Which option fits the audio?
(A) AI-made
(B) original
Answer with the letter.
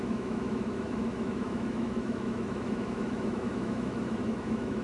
A